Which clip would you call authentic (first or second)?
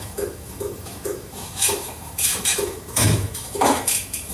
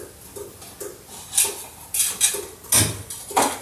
second